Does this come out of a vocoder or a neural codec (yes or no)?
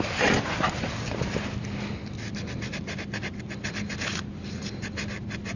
no